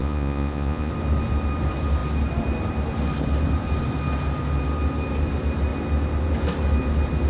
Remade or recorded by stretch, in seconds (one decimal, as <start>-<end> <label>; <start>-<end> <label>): 0.0-0.9 remade; 0.9-7.3 recorded